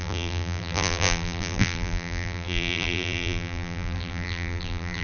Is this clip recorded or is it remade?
remade